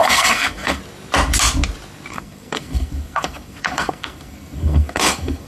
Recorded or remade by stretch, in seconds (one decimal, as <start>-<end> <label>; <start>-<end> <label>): 0.0-0.8 remade; 0.8-2.1 recorded; 2.1-5.5 remade